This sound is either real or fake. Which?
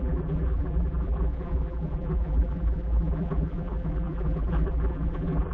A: fake